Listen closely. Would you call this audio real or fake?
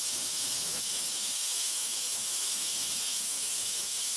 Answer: fake